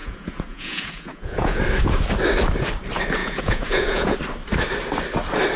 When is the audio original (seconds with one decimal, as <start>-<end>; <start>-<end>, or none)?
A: 1.6-3.2; 4.2-5.6